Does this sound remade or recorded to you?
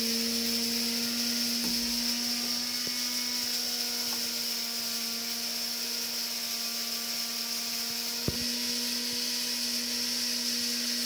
recorded